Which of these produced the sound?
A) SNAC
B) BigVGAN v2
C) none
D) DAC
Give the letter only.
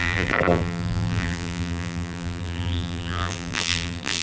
B